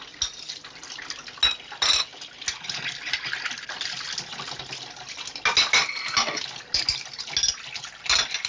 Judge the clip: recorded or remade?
recorded